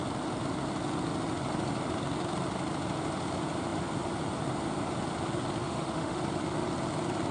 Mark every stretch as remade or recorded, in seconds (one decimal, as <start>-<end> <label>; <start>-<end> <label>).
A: 0.0-5.6 recorded; 5.6-6.2 remade; 6.2-7.3 recorded